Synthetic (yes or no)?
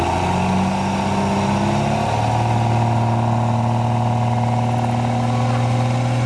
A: no